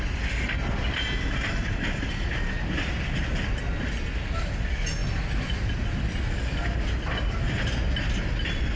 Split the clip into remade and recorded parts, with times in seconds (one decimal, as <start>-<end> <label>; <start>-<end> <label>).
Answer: 0.0-8.8 recorded